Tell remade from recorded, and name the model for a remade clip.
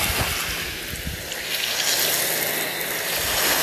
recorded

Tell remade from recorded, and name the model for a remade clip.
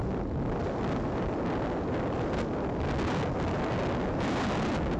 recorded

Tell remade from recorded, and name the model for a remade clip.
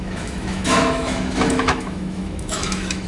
remade, autoencoder, DAC-VAE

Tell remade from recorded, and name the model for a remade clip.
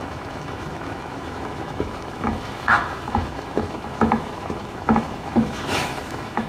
remade, autoencoder, DAC-VAE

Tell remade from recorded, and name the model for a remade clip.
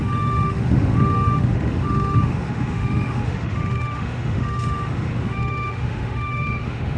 remade, autoencoder, DAC-VAE